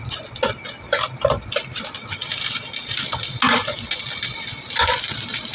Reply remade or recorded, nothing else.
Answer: recorded